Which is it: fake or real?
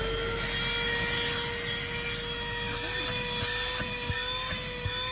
real